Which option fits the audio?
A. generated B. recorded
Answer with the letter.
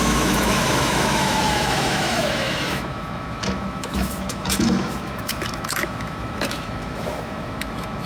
A